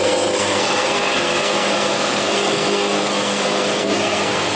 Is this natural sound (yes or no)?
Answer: no